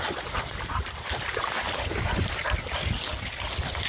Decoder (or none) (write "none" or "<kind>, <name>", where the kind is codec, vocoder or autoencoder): none